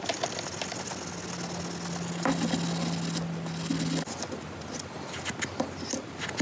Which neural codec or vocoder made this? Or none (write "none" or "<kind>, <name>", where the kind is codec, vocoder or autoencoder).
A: none